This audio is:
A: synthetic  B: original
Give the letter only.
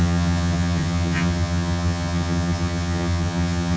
A